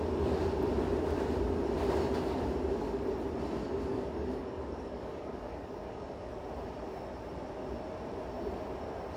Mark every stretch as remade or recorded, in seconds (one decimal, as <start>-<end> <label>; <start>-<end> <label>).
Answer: 0.0-3.9 recorded; 3.9-6.3 remade; 6.3-9.2 recorded